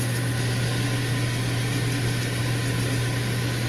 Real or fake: real